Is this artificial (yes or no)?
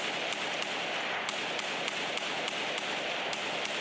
no